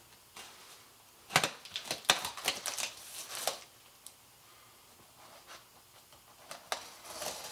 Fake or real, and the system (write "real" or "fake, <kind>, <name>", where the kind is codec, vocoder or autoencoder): real